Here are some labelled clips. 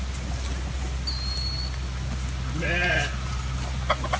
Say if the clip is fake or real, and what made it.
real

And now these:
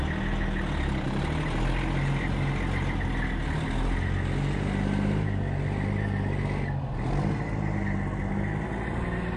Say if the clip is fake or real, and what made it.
real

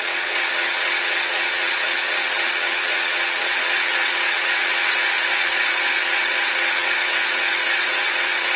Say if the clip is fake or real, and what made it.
fake, vocoder, WaveNeXt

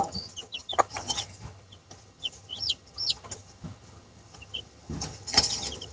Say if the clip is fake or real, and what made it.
fake, vocoder, HiFi-GAN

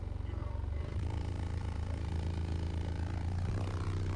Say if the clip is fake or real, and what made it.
fake, vocoder, BigVGAN v2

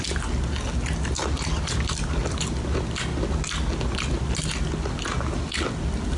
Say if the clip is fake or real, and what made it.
real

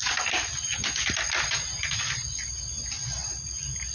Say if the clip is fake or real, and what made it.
real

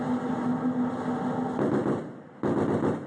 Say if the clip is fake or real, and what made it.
real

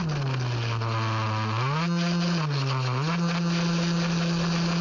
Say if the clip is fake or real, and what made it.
real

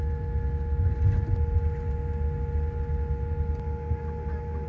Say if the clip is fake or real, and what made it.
real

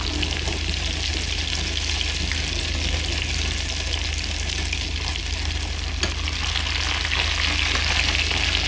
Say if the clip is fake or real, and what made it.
real